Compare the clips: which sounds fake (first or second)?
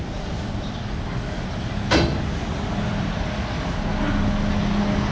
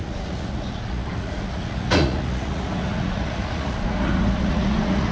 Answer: second